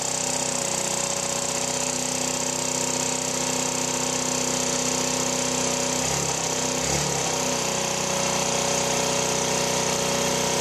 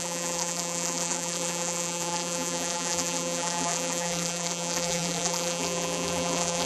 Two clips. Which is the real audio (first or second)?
first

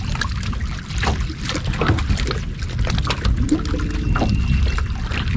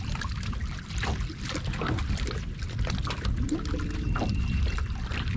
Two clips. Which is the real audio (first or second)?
first